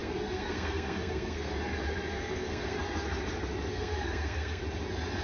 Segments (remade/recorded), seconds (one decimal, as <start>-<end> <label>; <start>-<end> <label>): 0.0-1.5 remade; 1.5-2.1 recorded; 2.1-2.8 remade; 2.8-3.7 recorded; 3.7-4.6 remade; 4.6-5.2 recorded